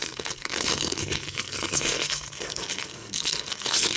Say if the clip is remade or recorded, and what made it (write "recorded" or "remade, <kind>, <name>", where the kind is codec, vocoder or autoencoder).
remade, codec, SNAC